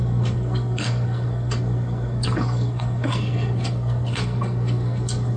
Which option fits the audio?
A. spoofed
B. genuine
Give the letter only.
A